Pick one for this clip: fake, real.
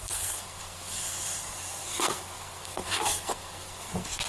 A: fake